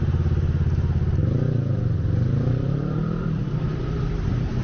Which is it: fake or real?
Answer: real